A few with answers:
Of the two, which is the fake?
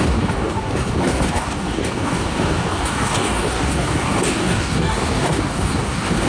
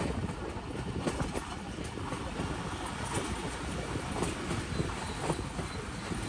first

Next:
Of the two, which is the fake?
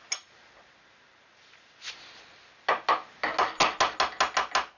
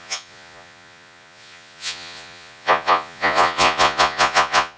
second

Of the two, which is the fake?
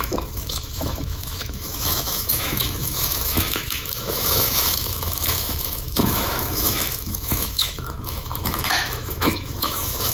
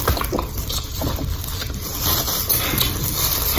first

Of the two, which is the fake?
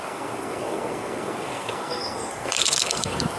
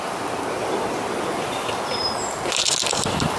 first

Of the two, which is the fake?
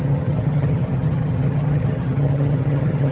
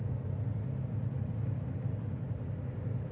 first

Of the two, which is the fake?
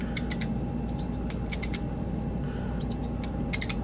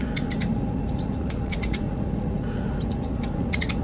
second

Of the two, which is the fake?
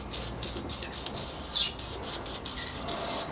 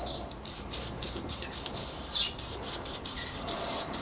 second